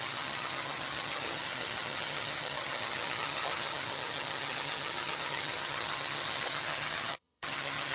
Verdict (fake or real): fake